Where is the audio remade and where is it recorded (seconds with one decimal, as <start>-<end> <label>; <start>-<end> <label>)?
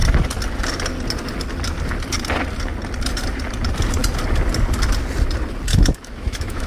0.0-5.7 recorded; 5.7-6.7 remade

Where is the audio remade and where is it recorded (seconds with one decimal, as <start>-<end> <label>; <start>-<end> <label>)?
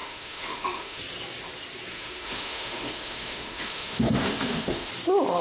0.0-1.0 remade; 1.0-1.9 recorded; 1.9-4.9 remade; 4.9-5.4 recorded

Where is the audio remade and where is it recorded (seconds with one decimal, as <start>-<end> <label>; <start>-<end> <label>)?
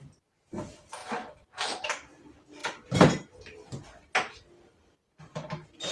0.0-5.9 recorded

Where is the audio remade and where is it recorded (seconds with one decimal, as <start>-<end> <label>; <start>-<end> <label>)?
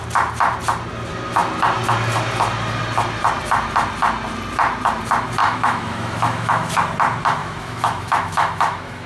0.0-5.4 recorded; 5.4-6.7 remade; 6.7-7.4 recorded; 7.4-9.1 remade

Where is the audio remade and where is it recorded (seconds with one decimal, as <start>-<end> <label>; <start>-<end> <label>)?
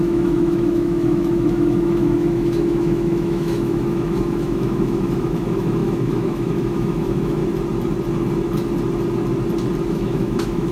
0.0-7.4 remade; 7.4-9.9 recorded; 9.9-10.7 remade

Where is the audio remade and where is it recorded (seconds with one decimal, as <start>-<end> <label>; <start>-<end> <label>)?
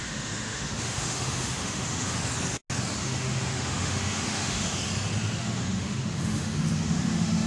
0.0-2.2 remade; 2.2-3.0 recorded; 3.0-4.8 remade; 4.8-5.4 recorded; 5.4-7.5 remade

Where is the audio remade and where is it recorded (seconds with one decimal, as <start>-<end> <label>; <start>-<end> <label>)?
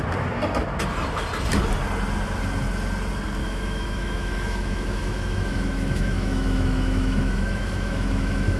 0.0-3.4 recorded; 3.4-8.6 remade